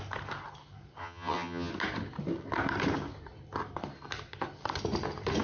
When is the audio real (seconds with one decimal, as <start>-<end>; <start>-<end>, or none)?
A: 0.0-1.0; 1.7-5.4

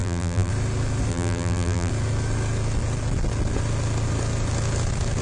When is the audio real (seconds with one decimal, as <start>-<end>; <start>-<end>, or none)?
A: 0.5-1.1; 1.9-5.2

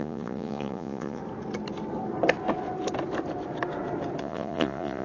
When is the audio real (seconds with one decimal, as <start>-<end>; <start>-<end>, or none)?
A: 1.2-4.2